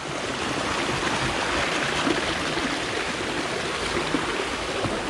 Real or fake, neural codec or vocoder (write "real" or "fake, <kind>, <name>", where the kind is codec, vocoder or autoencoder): real